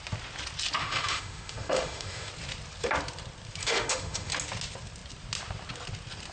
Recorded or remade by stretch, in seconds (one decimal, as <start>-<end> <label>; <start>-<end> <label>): 0.0-0.8 recorded; 0.8-2.3 remade; 2.3-3.6 recorded; 3.6-4.3 remade; 4.3-6.3 recorded